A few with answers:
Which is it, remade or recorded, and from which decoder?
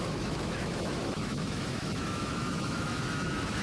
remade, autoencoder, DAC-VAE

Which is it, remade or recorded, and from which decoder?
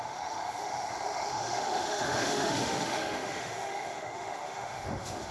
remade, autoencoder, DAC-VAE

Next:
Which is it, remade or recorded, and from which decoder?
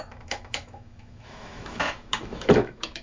remade, autoencoder, DAC-VAE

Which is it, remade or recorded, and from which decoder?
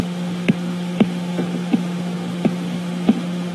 remade, autoencoder, DAC-VAE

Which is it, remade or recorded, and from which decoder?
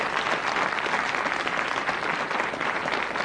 recorded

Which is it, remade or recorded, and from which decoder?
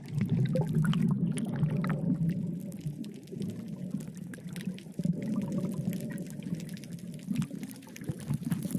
recorded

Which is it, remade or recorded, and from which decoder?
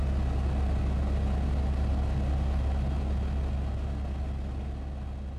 recorded